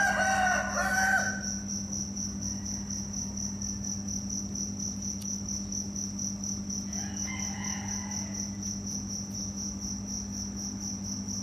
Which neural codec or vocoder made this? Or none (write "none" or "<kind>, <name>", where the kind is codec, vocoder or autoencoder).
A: none